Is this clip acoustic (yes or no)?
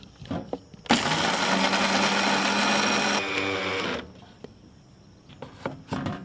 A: yes